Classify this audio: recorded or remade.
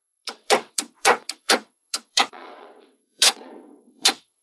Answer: remade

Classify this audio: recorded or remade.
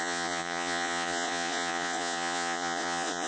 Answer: remade